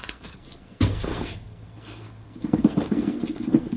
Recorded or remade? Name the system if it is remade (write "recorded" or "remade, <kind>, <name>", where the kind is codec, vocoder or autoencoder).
remade, codec, SNAC